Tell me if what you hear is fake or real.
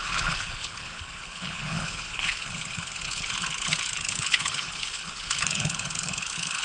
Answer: fake